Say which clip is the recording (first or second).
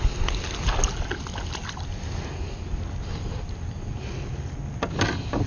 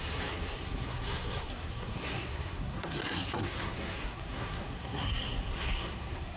first